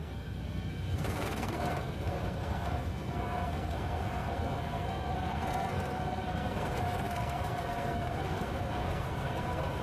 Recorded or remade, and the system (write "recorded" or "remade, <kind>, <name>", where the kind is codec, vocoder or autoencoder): remade, codec, SNAC